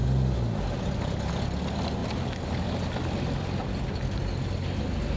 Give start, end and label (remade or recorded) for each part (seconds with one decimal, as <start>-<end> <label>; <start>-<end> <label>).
0.0-2.0 recorded; 2.0-3.6 remade; 3.6-5.2 recorded